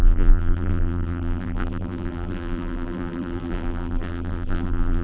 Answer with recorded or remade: remade